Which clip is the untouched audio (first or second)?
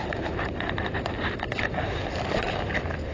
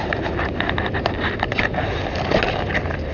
second